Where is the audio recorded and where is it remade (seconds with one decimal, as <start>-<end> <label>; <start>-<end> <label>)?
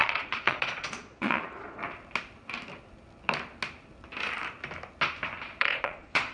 0.0-1.8 remade; 1.8-5.6 recorded; 5.6-6.3 remade